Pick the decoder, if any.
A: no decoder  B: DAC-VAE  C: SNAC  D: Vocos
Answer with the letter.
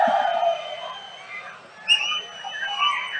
A